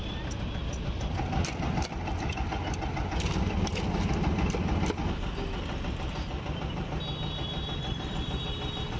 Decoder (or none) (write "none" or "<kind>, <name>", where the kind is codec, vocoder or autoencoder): none